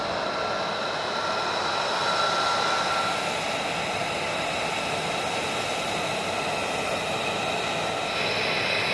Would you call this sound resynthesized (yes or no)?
no